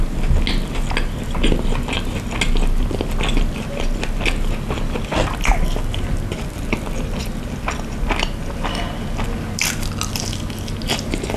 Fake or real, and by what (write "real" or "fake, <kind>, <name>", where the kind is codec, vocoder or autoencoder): real